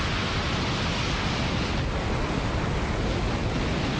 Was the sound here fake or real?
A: real